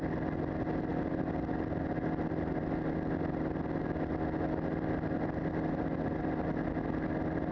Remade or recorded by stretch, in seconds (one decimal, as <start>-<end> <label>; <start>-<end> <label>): 0.0-7.5 recorded